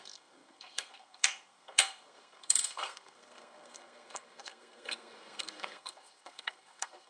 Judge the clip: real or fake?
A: fake